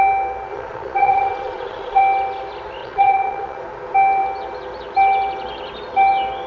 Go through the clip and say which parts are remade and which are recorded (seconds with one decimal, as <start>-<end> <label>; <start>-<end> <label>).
0.0-0.5 recorded; 0.5-2.0 remade; 2.0-2.8 recorded; 2.8-3.6 remade; 3.6-6.5 recorded